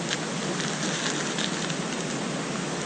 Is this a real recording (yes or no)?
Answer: yes